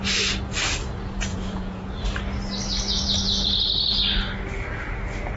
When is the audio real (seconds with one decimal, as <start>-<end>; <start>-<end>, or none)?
0.0-1.3; 2.0-5.4